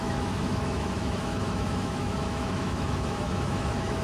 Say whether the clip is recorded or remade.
remade